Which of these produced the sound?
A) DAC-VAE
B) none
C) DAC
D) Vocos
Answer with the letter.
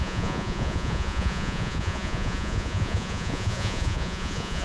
D